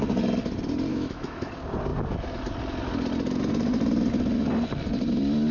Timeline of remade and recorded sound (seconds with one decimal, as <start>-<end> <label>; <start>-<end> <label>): 0.0-0.9 recorded; 0.9-1.5 remade; 1.5-5.5 recorded

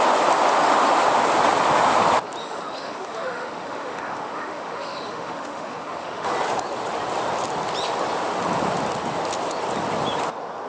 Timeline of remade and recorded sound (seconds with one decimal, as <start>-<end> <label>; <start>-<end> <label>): 0.0-2.4 recorded; 2.4-6.3 remade; 6.3-10.7 recorded

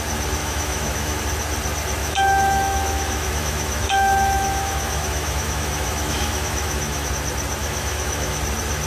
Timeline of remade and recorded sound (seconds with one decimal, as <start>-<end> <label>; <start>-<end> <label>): 0.0-0.4 recorded; 0.4-1.2 remade; 1.2-2.0 recorded; 2.0-7.1 remade; 7.1-7.6 recorded; 7.6-8.4 remade; 8.4-8.9 recorded

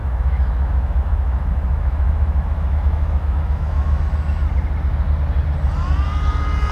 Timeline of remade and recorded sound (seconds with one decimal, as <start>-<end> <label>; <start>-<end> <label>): 0.0-4.0 remade; 4.0-6.7 recorded

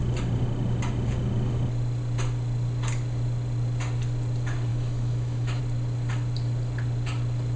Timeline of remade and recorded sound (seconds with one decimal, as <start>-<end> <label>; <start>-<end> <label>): 0.0-4.7 recorded; 4.7-5.6 remade; 5.6-7.6 recorded

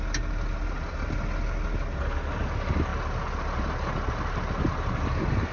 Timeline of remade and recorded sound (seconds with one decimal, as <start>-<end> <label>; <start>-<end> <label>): 0.0-5.5 recorded

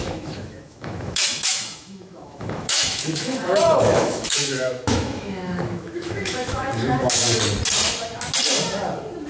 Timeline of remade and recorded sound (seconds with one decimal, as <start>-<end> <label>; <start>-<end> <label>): 0.0-7.2 remade; 7.2-9.3 recorded